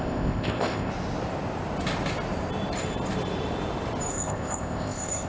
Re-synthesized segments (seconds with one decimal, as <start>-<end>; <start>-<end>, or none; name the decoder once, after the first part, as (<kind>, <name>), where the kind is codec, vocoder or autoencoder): 0.0-0.9 (codec, ZipCodec); 4.1-5.3